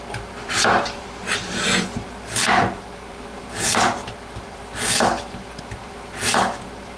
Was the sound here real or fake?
fake